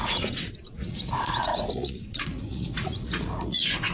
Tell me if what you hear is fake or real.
fake